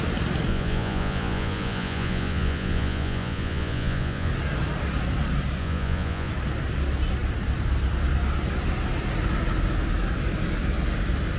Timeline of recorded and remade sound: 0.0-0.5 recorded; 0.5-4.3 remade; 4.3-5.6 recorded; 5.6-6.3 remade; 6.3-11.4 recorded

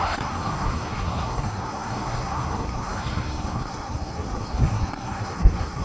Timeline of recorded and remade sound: 0.0-5.8 remade

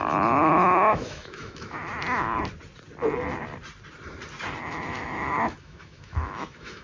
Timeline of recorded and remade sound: 0.0-1.9 remade; 1.9-4.6 recorded; 4.6-6.8 remade

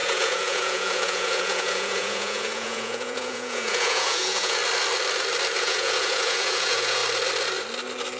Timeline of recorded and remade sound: 0.0-4.6 remade; 4.6-5.6 recorded; 5.6-7.0 remade; 7.0-8.2 recorded

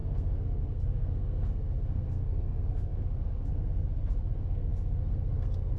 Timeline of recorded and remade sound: 0.0-5.8 remade